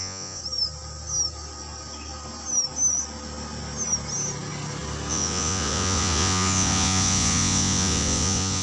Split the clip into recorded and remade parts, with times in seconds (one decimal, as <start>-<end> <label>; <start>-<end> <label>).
0.0-0.4 remade; 0.4-5.1 recorded; 5.1-8.6 remade